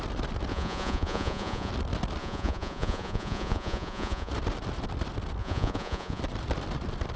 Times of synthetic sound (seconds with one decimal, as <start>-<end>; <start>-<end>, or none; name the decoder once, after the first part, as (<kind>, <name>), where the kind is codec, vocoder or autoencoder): 0.5-1.7 (vocoder, Vocos); 2.2-4.3; 5.4-6.2